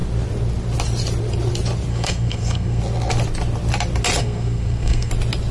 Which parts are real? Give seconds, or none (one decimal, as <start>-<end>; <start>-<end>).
0.0-1.9; 2.8-4.2; 5.1-5.5

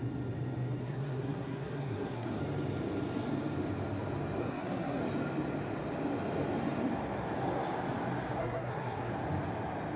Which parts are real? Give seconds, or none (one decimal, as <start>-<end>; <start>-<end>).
0.0-0.8; 2.4-4.4; 5.0-8.4; 9.1-10.0

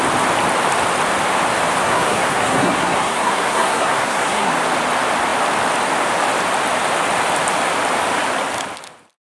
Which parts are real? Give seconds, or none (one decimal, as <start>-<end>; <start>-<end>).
0.0-1.8; 4.5-9.2

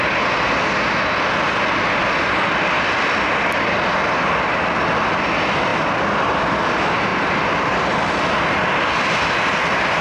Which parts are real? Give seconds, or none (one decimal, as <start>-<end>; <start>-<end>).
0.0-10.0

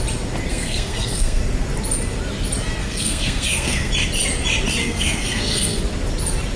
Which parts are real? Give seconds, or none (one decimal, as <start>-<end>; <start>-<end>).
0.0-0.5; 1.4-2.8; 3.9-4.8; 5.8-6.6

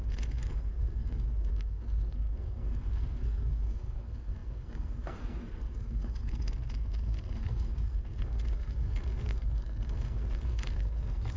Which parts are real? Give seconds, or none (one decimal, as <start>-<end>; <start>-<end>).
none

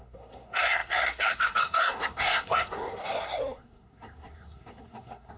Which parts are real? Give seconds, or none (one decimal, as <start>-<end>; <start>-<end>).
none

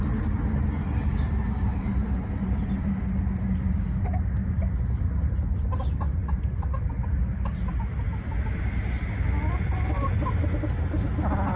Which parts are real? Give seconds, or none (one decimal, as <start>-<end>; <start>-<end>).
0.0-11.6